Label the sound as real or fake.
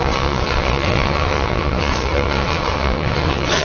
fake